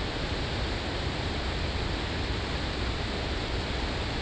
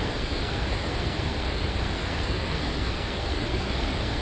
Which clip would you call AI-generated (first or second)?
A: second